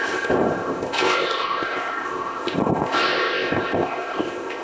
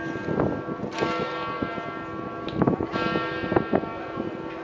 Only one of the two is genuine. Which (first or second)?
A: second